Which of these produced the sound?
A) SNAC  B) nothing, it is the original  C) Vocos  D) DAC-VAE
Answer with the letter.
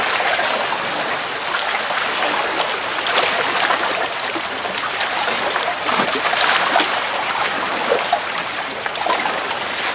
B